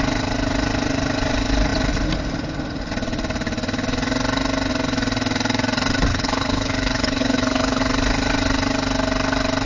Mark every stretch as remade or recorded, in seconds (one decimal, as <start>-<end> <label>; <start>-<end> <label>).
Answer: 0.0-6.1 recorded; 6.1-7.8 remade; 7.8-9.7 recorded